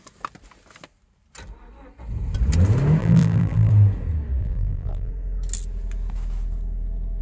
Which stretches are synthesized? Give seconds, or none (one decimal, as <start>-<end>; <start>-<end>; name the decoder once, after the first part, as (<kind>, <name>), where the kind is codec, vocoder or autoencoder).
3.0-3.7 (vocoder, BigVGAN v2); 4.4-5.1